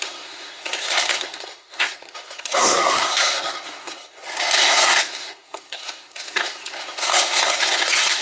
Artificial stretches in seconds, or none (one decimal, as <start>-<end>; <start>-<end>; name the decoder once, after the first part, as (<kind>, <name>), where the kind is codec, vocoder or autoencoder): 0.0-8.2 (codec, SNAC)